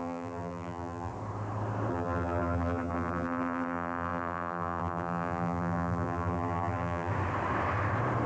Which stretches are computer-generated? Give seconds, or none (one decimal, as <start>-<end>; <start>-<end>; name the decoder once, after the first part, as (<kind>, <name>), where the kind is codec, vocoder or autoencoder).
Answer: 0.0-1.1 (vocoder, BigVGAN v2); 1.9-7.1